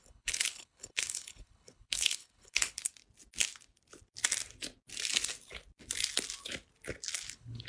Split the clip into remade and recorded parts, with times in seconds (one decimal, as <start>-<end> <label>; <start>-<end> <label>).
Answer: 0.0-2.8 remade; 2.8-7.2 recorded; 7.2-7.7 remade